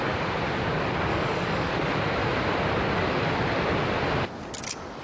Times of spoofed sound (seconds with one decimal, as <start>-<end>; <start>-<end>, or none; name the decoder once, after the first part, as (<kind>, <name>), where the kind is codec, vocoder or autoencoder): 1.1-1.7 (codec, DAC)